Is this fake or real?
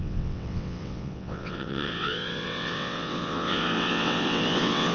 fake